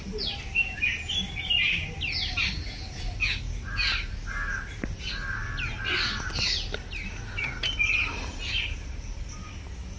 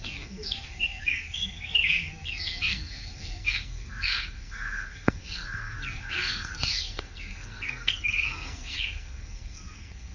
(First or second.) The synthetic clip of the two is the second